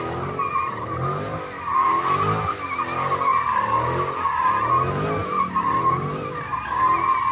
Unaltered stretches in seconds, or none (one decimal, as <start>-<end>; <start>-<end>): 0.0-7.3